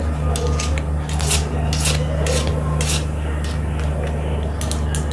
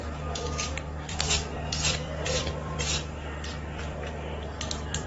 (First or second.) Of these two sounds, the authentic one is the first